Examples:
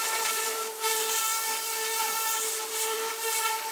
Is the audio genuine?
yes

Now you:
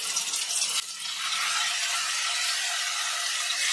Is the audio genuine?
yes